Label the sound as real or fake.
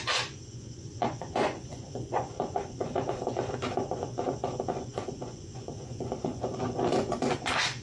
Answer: fake